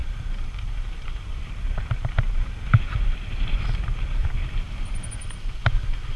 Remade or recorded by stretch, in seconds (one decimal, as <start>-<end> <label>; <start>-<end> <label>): 0.0-3.7 remade; 3.7-4.2 recorded; 4.2-5.1 remade; 5.1-6.2 recorded